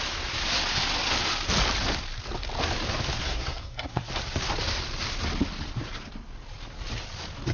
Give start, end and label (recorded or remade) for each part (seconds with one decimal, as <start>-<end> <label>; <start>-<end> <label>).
0.0-3.2 recorded; 3.2-4.1 remade; 4.1-7.5 recorded